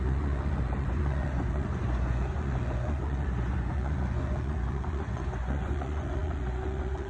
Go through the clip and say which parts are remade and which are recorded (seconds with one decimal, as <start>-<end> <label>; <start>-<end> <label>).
0.0-7.1 remade